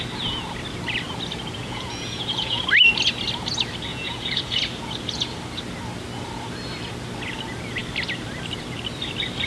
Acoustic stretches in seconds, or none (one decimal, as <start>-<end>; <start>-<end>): 0.0-1.6; 2.6-3.9; 4.6-9.5